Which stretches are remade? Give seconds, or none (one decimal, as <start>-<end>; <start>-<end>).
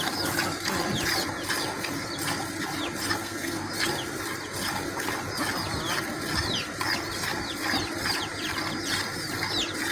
3.2-3.7